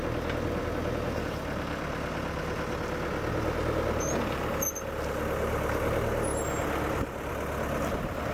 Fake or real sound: real